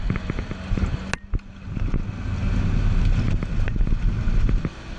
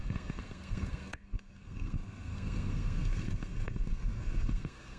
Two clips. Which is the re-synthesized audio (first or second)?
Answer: second